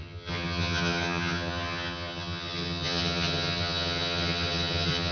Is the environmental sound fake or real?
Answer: fake